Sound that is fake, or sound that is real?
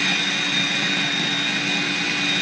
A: real